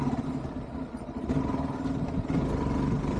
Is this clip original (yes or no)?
yes